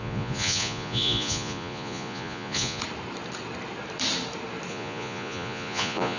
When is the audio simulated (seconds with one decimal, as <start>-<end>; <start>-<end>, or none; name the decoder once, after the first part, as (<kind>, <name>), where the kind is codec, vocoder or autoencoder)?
0.0-2.8 (vocoder, Vocos); 4.7-6.2